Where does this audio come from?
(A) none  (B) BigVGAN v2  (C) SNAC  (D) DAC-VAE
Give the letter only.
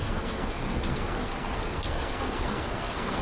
C